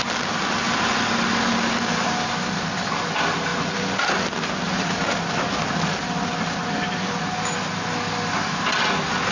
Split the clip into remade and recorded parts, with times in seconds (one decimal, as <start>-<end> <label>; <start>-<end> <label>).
0.0-9.3 recorded